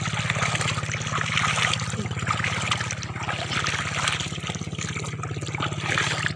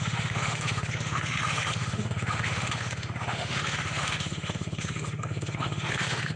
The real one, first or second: first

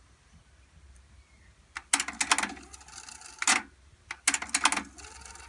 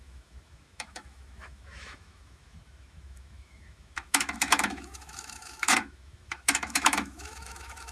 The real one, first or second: first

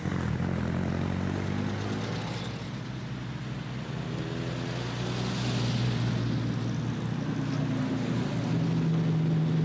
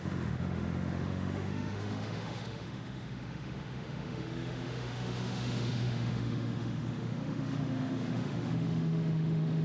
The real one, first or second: first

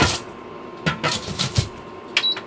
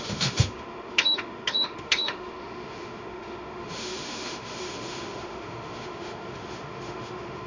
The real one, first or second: first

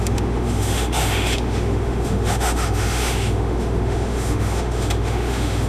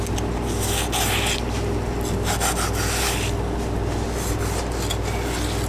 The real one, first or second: second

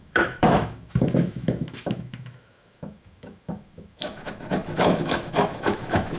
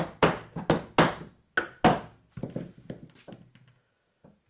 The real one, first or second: second